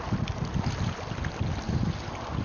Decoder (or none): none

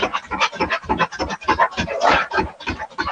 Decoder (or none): vocoder, BigVGAN v2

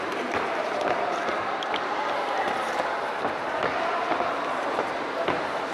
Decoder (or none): vocoder, BigVGAN v2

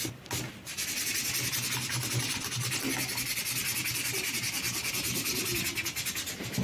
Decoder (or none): none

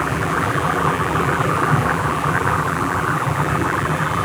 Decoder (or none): vocoder, BigVGAN v2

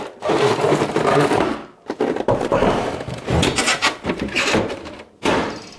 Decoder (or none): vocoder, BigVGAN v2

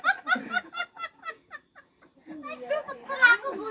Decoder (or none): vocoder, BigVGAN v2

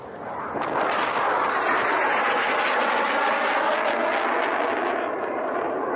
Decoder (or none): none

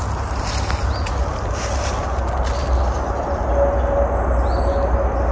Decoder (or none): none